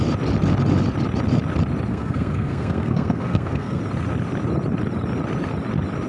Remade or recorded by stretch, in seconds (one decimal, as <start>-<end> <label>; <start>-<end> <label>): 0.0-1.9 recorded; 1.9-3.8 remade; 3.8-6.1 recorded